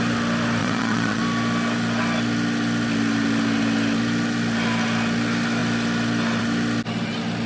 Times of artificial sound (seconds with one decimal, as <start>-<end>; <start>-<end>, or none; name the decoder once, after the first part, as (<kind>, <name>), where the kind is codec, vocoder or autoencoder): 0.6-1.2 (vocoder, Vocos)